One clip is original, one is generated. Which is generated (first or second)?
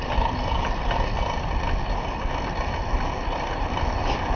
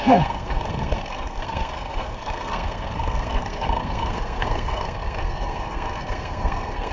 second